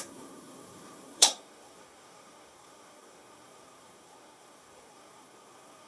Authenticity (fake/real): fake